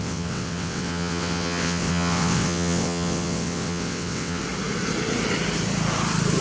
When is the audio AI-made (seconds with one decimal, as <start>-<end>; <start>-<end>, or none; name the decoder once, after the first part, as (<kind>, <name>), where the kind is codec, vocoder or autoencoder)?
0.0-4.4 (vocoder, WaveNeXt)